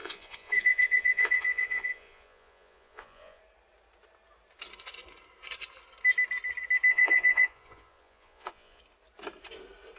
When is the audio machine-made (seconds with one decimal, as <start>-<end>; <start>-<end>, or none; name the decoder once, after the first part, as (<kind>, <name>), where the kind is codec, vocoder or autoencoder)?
0.0-3.4 (vocoder, Vocos); 6.9-8.8